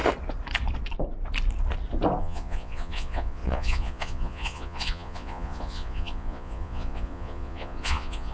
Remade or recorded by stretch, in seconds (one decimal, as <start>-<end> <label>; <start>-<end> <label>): 0.0-2.2 recorded; 2.2-8.3 remade